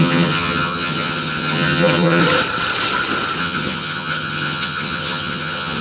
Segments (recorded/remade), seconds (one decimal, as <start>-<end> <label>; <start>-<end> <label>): 0.0-2.2 remade; 2.2-3.4 recorded; 3.4-5.8 remade